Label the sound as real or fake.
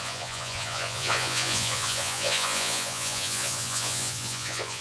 fake